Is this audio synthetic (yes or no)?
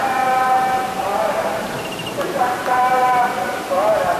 no